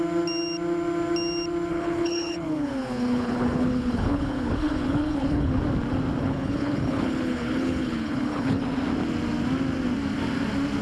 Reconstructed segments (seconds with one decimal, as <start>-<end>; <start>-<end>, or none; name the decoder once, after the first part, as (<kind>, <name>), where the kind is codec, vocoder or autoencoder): 1.7-5.6 (codec, HILCodec); 6.2-8.6